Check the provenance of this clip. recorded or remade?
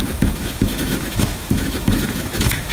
remade